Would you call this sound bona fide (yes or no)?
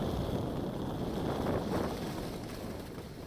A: yes